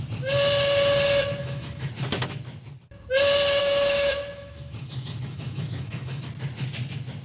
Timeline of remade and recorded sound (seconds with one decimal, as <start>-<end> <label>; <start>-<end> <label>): 0.0-1.4 recorded; 1.4-1.9 remade; 1.9-3.6 recorded; 3.6-6.2 remade; 6.2-7.2 recorded